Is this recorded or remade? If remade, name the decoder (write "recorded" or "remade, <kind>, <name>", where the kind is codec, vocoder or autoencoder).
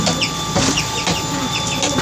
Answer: recorded